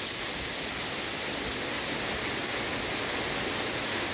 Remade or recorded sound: recorded